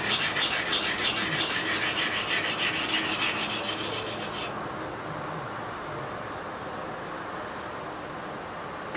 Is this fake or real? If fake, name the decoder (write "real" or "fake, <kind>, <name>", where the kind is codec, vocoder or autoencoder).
real